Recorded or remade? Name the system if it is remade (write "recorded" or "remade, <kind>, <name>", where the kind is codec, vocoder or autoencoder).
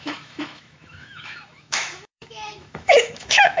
remade, autoencoder, DAC-VAE